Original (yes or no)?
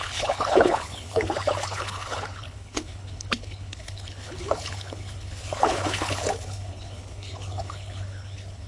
no